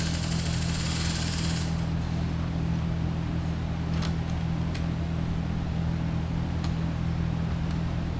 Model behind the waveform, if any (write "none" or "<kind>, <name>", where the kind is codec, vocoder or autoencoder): none